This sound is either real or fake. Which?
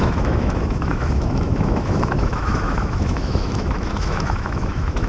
fake